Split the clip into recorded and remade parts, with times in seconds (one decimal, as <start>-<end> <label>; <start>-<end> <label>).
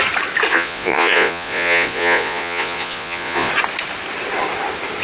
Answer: 0.0-0.5 recorded; 0.5-3.5 remade; 3.5-5.0 recorded